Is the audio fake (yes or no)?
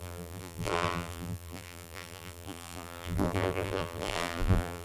yes